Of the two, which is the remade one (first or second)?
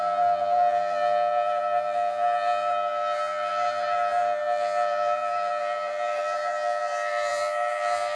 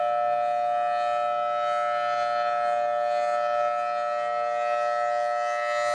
first